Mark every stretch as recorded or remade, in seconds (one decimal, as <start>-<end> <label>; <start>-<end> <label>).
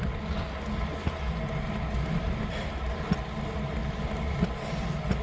0.0-5.2 recorded